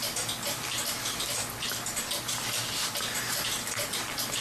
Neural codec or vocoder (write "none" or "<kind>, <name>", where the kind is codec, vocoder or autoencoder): none